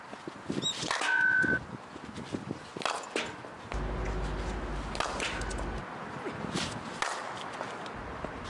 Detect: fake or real real